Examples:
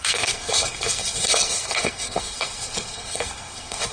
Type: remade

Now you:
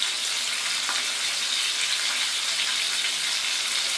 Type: recorded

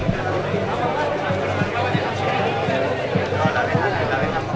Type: recorded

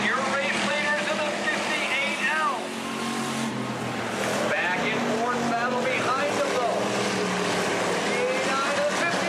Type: recorded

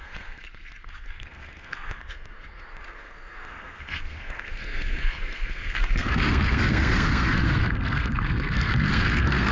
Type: remade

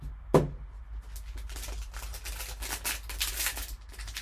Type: recorded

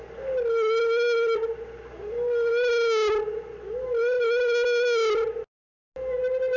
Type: recorded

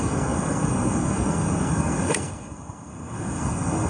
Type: remade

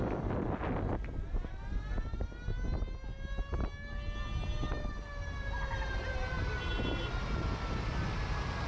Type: recorded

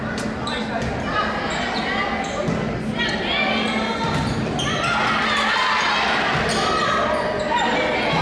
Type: recorded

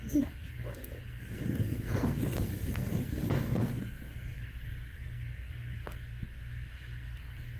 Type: remade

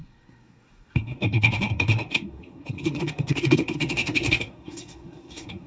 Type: remade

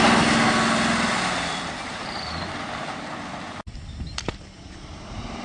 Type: recorded